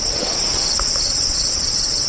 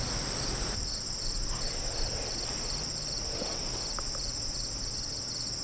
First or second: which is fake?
first